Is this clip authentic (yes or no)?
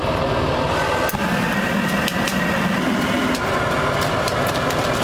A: yes